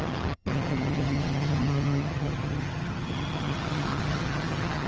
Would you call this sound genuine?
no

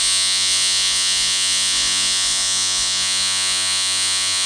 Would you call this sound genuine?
no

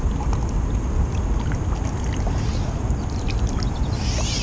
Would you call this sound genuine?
yes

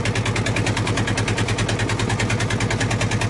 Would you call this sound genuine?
yes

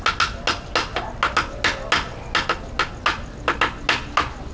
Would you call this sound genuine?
yes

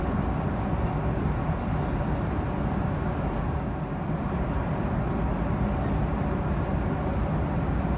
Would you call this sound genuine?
yes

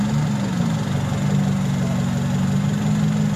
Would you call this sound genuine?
yes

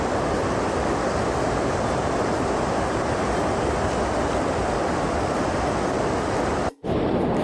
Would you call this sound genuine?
yes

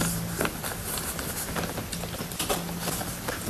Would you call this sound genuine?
yes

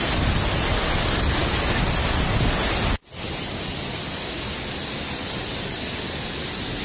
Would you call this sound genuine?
yes